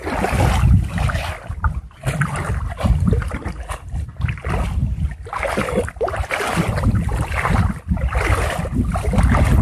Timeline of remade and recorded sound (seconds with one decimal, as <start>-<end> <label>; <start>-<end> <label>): 0.0-9.6 recorded